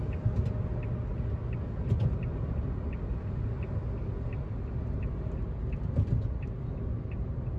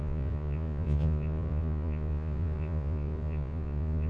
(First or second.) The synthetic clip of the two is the second